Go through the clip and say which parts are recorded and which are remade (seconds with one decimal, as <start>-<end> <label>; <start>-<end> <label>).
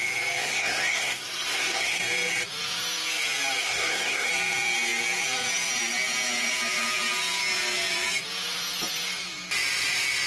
0.0-0.4 recorded; 0.4-2.0 remade; 2.0-3.6 recorded; 3.6-4.3 remade; 4.3-10.3 recorded